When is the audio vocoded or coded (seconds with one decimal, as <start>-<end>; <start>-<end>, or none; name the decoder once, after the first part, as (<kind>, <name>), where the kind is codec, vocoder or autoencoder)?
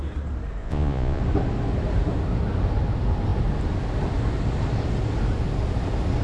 0.6-1.2 (vocoder, Vocos)